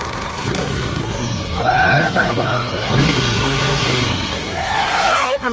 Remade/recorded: remade